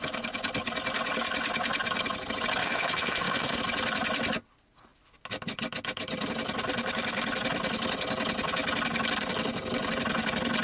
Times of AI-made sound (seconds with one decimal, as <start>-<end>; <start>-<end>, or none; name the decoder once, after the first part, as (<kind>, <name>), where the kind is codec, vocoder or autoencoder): 2.6-3.6 (autoencoder, DAC-VAE)